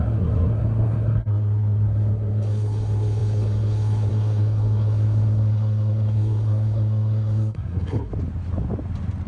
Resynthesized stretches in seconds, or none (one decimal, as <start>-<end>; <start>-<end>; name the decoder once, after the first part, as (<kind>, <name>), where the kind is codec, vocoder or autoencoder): 0.0-8.1 (codec, SNAC)